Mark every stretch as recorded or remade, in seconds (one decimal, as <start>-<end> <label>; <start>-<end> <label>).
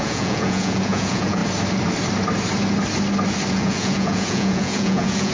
0.0-1.4 remade; 1.4-3.5 recorded; 3.5-5.3 remade